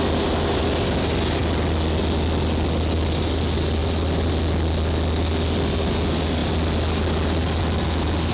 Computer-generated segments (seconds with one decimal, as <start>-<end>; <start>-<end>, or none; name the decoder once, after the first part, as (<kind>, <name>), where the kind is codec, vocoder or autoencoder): 3.8-4.3 (vocoder, BigVGAN v2)